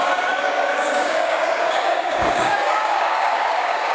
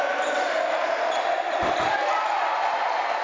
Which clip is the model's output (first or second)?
first